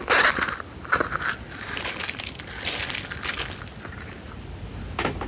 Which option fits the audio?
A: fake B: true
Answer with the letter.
B